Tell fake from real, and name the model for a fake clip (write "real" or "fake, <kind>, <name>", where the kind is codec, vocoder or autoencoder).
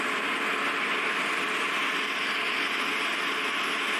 real